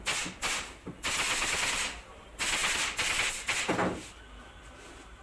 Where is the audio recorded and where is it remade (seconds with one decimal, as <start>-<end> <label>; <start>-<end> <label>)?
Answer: 0.0-5.2 recorded

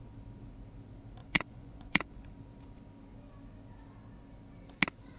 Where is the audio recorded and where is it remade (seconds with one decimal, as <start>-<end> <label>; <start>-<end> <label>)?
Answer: 0.0-1.2 recorded; 1.2-2.3 remade; 2.3-5.2 recorded

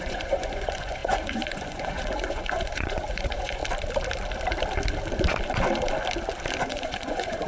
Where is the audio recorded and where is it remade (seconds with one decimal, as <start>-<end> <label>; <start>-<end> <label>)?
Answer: 0.0-3.6 remade; 3.6-6.6 recorded; 6.6-7.5 remade

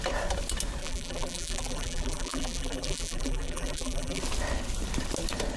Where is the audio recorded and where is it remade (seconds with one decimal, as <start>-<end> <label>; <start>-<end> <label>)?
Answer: 0.0-0.8 recorded; 0.8-4.2 remade; 4.2-5.6 recorded

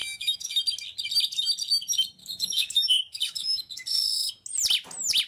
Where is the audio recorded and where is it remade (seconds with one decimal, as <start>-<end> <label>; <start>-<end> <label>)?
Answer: 0.0-0.6 remade; 0.6-2.2 recorded; 2.2-4.3 remade; 4.3-5.3 recorded

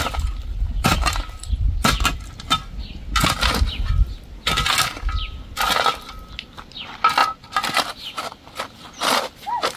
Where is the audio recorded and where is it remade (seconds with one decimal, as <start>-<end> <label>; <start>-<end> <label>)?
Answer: 0.0-9.8 recorded

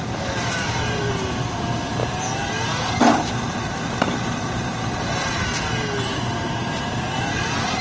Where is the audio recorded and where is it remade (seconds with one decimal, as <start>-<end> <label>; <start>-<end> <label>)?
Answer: 0.0-2.0 remade; 2.0-6.1 recorded; 6.1-7.8 remade